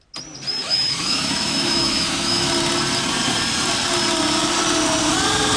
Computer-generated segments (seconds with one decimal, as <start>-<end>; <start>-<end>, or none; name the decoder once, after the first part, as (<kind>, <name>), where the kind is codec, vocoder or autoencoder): 0.6-2.5 (autoencoder, DAC-VAE)

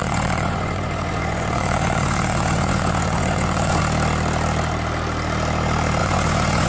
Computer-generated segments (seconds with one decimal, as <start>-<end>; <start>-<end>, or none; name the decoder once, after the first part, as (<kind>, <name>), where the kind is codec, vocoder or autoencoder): 0.0-3.8 (vocoder, Vocos); 6.0-6.7

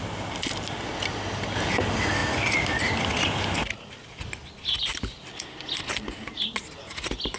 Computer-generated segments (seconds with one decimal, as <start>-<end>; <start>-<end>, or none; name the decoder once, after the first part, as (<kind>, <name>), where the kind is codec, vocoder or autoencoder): none

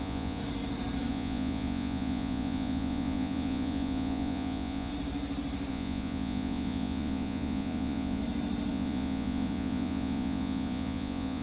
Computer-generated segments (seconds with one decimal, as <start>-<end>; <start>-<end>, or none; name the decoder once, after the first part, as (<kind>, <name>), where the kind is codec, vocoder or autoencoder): 0.0-0.4 (vocoder, Vocos); 1.1-4.9; 5.7-8.2; 8.7-11.4

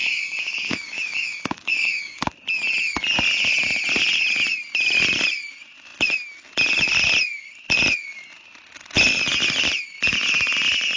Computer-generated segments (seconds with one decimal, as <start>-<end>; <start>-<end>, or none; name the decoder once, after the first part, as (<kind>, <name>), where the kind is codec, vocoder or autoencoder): 0.0-2.3 (codec, DAC)